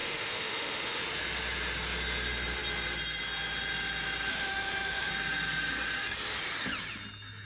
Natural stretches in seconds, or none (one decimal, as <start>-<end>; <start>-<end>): 1.0-4.3; 5.1-7.5